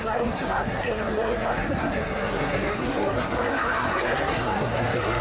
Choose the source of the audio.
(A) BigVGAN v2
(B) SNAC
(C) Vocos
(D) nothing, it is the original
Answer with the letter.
B